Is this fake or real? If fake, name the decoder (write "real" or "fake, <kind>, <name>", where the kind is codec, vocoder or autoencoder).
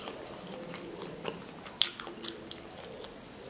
real